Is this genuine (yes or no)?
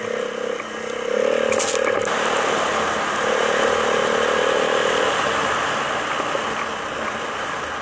yes